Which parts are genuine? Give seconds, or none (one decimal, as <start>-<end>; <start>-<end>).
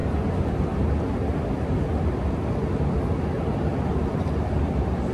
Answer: 0.0-5.1